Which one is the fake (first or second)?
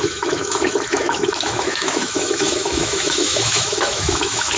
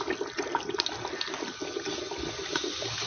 first